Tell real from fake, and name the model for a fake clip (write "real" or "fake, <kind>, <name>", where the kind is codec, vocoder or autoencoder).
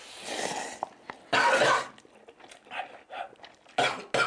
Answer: real